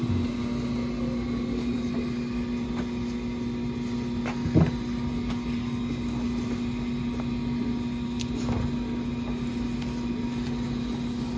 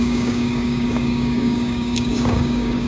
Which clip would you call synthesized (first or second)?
second